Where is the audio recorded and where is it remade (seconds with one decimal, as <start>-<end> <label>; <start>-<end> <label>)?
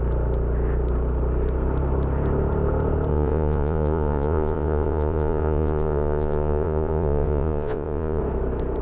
0.0-3.1 recorded; 3.1-8.2 remade; 8.2-8.8 recorded